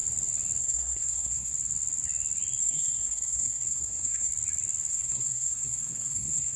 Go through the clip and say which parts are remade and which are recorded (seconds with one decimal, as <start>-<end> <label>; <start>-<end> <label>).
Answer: 0.0-0.6 recorded; 0.6-1.5 remade; 1.5-2.6 recorded; 2.6-4.3 remade; 4.3-4.9 recorded; 4.9-6.6 remade